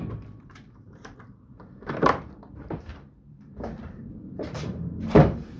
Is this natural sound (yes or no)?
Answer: no